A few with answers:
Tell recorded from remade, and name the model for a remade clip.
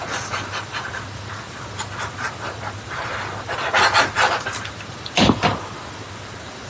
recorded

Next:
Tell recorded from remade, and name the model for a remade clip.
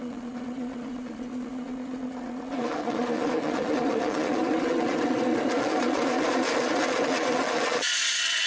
remade, vocoder, Vocos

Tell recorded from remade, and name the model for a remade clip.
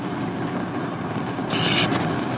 recorded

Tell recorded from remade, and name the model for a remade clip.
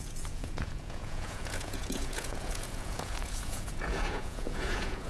remade, vocoder, Vocos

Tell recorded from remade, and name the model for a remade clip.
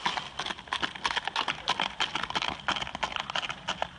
recorded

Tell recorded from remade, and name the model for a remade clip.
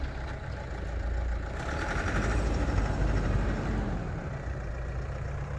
remade, vocoder, BigVGAN v2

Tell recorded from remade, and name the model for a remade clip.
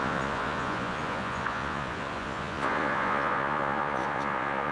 remade, vocoder, Vocos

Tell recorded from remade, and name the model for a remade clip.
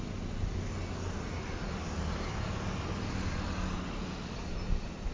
recorded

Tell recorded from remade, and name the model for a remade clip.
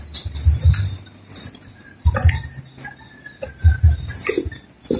recorded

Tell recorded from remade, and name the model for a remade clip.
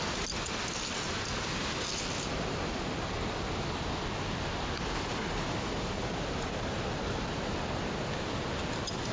recorded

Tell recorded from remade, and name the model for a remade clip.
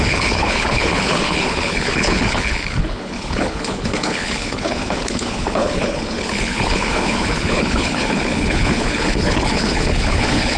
remade, codec, HILCodec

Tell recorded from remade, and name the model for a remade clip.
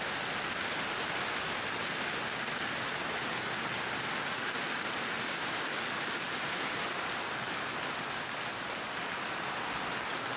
recorded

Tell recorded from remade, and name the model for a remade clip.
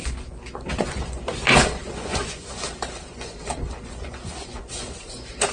remade, vocoder, Vocos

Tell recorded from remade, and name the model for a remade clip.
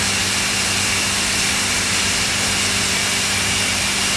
recorded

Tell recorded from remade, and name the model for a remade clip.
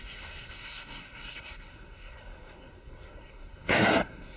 remade, codec, SNAC